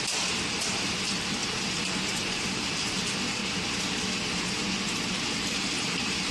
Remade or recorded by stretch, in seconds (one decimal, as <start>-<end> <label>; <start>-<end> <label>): 0.0-1.4 remade; 1.4-2.0 recorded; 2.0-3.4 remade; 3.4-5.5 recorded; 5.5-6.3 remade